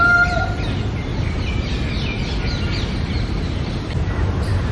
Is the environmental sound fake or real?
real